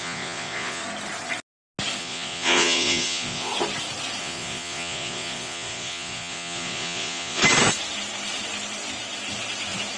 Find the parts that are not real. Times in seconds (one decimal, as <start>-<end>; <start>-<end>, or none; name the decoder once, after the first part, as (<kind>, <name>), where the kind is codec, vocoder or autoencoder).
0.0-0.8 (vocoder, Vocos); 2.0-3.5; 4.2-7.4